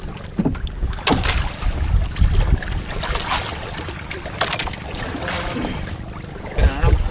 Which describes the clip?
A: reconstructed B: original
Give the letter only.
B